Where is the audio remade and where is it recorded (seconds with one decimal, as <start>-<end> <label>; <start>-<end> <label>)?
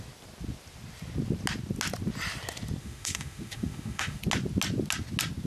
0.0-2.8 recorded; 2.8-4.2 remade; 4.2-5.5 recorded